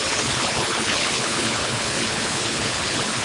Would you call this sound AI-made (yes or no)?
yes